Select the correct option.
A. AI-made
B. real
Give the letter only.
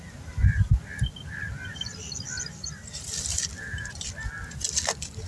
B